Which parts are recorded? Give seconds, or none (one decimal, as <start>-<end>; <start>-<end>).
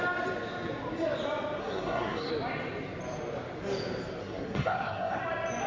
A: 0.0-1.6; 2.3-4.2; 5.2-5.7